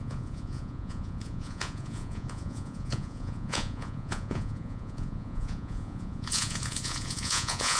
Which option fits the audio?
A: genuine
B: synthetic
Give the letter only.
B